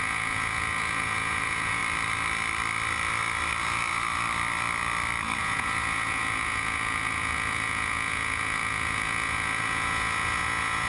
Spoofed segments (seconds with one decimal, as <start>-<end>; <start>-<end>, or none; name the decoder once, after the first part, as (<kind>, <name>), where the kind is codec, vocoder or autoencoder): 0.0-1.8 (vocoder, Vocos); 5.4-10.9